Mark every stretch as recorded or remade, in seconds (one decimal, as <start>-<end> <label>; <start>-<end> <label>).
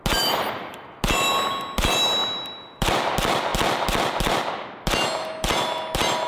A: 0.0-6.3 recorded